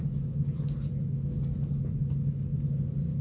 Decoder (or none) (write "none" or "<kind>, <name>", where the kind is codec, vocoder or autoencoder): none